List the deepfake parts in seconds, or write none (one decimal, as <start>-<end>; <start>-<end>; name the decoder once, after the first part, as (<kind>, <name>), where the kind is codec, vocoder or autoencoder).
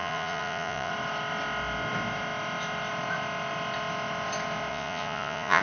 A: 0.0-0.9 (vocoder, Vocos); 4.7-5.6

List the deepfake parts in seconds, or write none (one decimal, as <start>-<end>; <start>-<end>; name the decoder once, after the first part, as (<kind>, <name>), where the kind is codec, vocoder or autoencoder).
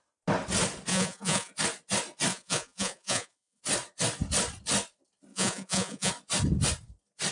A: 0.9-1.5 (vocoder, Vocos); 2.3-3.6; 5.3-6.1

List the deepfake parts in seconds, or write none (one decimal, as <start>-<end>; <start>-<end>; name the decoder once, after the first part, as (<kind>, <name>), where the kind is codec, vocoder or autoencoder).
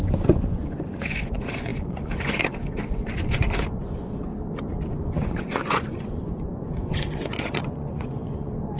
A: 0.0-4.3 (vocoder, Vocos); 4.9-8.8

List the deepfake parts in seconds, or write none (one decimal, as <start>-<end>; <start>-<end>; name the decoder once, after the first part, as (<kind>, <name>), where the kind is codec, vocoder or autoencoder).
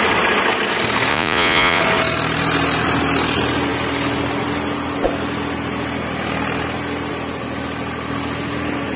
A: 1.1-1.8 (vocoder, Vocos)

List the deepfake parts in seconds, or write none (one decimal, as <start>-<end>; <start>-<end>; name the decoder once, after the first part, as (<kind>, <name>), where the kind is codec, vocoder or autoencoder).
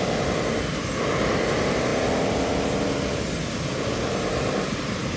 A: none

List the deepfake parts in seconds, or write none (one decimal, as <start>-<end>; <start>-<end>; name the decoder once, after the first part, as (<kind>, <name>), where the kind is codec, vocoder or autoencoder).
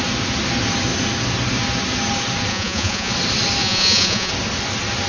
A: 2.5-3.1 (vocoder, Vocos); 3.6-4.3